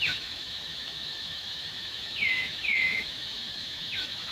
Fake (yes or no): yes